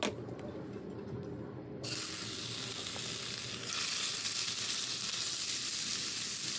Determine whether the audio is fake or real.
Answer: real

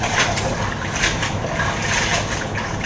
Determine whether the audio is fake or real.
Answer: real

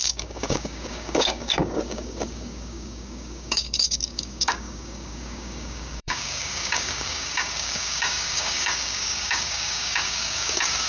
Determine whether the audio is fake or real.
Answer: fake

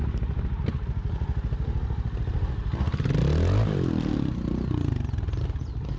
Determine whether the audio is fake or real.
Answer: real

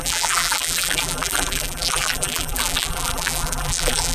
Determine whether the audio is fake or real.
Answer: fake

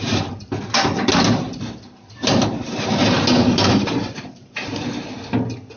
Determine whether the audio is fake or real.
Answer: real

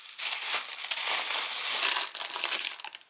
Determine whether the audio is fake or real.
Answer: real